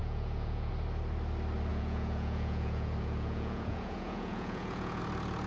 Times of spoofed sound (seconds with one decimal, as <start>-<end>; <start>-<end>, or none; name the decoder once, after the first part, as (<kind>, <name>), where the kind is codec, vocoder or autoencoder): 0.0-0.7 (vocoder, Vocos); 1.7-5.0